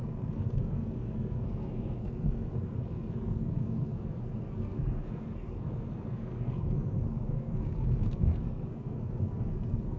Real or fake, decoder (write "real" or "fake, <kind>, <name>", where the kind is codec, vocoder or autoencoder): fake, codec, SNAC